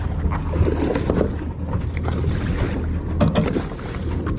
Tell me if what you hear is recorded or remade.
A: recorded